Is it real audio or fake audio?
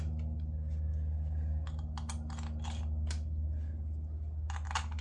real